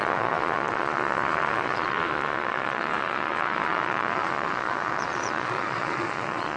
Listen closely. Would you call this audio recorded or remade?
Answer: remade